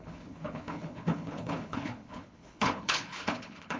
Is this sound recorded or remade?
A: remade